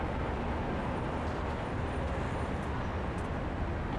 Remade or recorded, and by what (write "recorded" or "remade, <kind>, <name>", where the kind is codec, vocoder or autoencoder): recorded